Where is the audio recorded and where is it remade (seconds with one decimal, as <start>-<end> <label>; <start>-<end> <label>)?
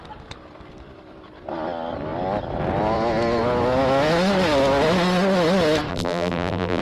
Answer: 0.0-5.9 recorded; 5.9-6.8 remade